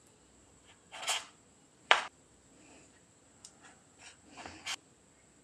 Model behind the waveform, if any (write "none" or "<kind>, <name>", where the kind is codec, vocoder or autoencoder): vocoder, BigVGAN v2